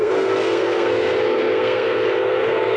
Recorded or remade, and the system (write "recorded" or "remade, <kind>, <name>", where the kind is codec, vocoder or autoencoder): remade, codec, SNAC